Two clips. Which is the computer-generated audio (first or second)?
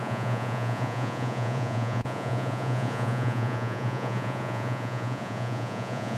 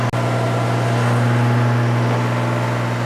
first